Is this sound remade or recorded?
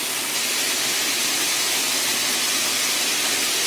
recorded